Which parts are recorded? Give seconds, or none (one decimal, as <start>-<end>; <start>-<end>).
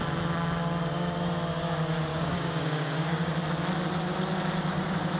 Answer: 0.0-2.1; 3.3-5.2